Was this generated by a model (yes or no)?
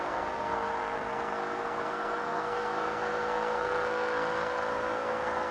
yes